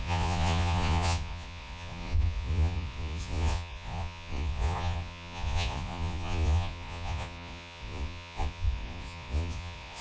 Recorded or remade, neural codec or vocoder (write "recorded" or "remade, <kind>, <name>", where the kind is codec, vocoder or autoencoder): remade, vocoder, Vocos